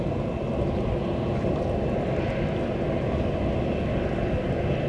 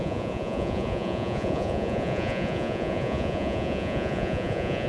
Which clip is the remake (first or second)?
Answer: second